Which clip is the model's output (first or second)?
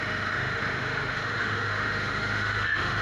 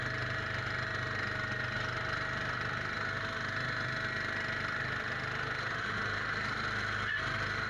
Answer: first